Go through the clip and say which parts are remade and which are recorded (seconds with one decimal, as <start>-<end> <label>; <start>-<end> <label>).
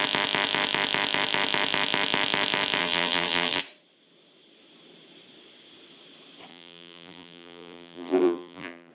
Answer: 0.0-2.8 recorded; 2.8-3.6 remade; 3.6-6.5 recorded; 6.5-8.9 remade